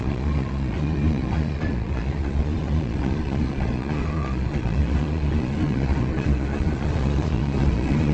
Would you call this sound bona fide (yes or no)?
no